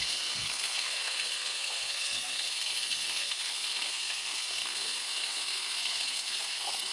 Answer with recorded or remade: remade